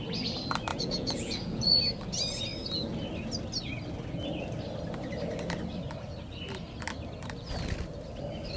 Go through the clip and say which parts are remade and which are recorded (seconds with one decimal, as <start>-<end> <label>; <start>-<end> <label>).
0.0-0.7 recorded; 0.7-1.8 remade; 1.8-8.6 recorded

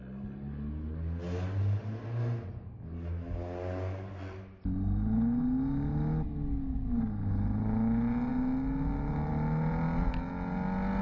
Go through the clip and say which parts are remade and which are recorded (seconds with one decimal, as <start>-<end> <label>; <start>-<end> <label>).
0.0-11.0 recorded

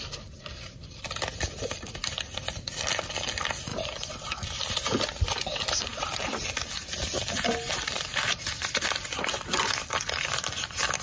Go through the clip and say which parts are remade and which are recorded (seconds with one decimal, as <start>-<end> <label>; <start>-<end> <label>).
0.0-11.0 recorded

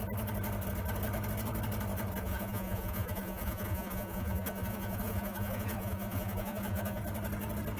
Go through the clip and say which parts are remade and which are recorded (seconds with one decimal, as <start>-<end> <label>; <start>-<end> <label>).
0.0-2.2 recorded; 2.2-7.0 remade; 7.0-7.8 recorded

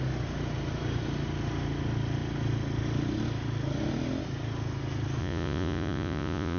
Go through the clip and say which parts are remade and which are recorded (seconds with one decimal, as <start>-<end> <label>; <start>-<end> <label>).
0.0-5.2 recorded; 5.2-6.6 remade

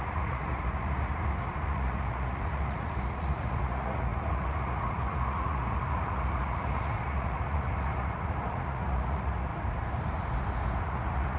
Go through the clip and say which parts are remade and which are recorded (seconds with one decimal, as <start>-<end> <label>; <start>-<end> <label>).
0.0-9.5 remade; 9.5-10.8 recorded; 10.8-11.4 remade

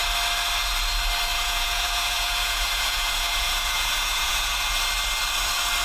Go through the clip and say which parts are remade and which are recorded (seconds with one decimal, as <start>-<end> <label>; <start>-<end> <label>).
0.0-1.3 recorded; 1.3-4.8 remade; 4.8-5.8 recorded

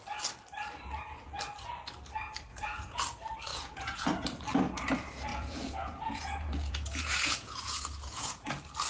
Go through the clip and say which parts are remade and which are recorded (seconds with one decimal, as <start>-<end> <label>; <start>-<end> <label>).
0.0-2.5 recorded; 2.5-3.0 remade; 3.0-3.5 recorded; 3.5-4.1 remade; 4.1-5.3 recorded; 5.3-8.5 remade; 8.5-8.9 recorded